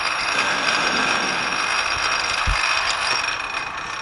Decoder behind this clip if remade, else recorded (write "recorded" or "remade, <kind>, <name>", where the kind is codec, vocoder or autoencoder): recorded